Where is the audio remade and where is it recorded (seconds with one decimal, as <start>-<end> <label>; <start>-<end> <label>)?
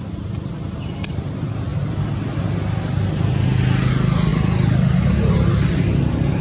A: 0.0-6.4 recorded